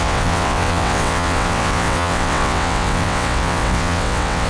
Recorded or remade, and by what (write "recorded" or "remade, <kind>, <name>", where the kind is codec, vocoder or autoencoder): remade, vocoder, WaveNeXt